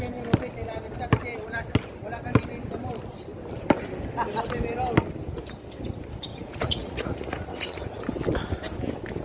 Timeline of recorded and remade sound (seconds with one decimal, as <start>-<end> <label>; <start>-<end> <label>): 0.0-6.3 recorded; 6.3-8.0 remade; 8.0-9.2 recorded